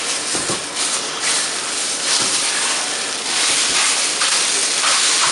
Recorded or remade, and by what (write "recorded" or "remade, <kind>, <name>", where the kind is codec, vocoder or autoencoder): recorded